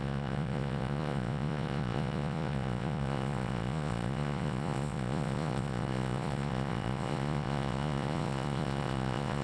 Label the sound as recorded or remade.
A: remade